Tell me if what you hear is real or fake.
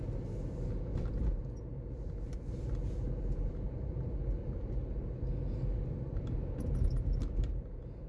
real